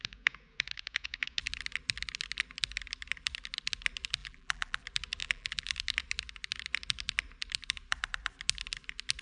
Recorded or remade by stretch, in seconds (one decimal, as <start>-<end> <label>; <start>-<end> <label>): 0.0-4.2 recorded; 4.2-4.8 remade; 4.8-5.2 recorded; 5.2-5.7 remade; 5.7-9.2 recorded